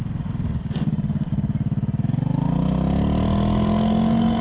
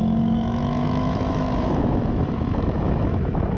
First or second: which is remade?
second